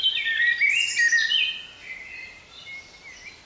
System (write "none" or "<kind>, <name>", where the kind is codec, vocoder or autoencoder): none